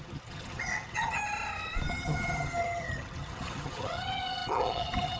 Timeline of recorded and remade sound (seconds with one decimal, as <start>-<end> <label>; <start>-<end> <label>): 0.0-1.2 remade; 1.2-1.9 recorded; 1.9-5.2 remade